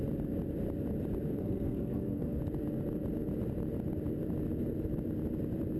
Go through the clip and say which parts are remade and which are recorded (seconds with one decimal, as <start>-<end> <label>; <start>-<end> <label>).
0.0-1.4 recorded; 1.4-2.4 remade; 2.4-5.8 recorded